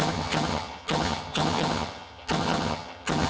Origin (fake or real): fake